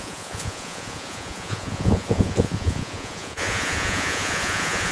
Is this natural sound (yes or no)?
no